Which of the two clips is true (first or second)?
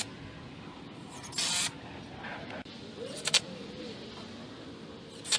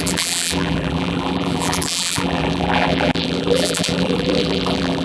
first